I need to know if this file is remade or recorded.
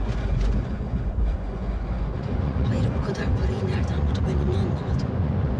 remade